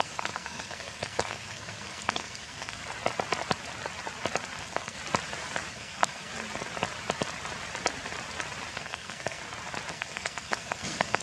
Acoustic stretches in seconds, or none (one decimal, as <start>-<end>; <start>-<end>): 2.8-4.6; 5.0-5.7; 6.3-8.7; 9.4-9.9